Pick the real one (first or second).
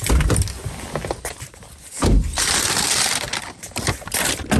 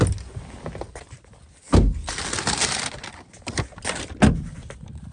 second